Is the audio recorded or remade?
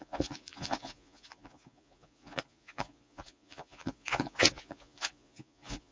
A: remade